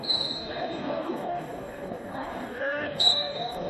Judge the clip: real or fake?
fake